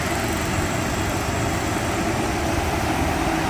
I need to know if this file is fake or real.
real